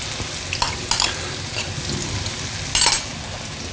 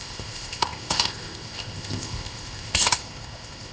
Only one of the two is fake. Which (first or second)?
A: second